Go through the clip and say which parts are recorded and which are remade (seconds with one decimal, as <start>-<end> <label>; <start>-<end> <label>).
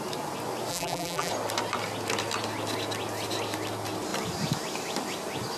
0.0-0.7 recorded; 0.7-1.3 remade; 1.3-5.6 recorded